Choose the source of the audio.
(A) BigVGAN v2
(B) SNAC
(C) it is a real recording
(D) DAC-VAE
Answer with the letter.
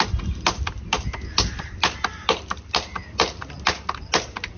C